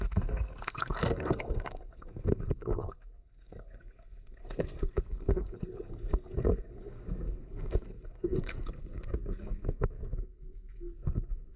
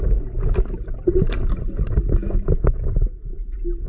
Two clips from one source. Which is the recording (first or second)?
second